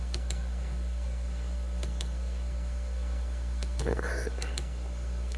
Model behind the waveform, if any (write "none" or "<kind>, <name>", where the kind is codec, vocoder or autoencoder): codec, SNAC